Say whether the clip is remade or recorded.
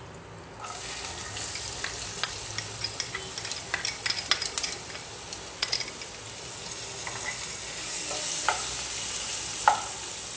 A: recorded